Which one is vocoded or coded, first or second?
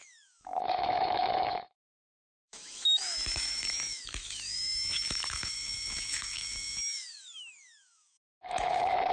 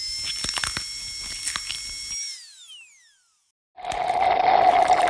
first